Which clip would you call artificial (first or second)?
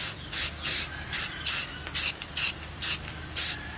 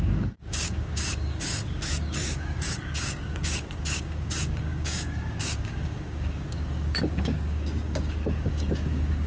second